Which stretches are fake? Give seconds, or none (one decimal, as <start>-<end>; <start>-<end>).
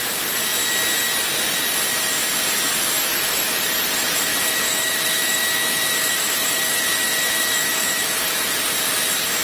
3.1-3.6; 4.3-8.4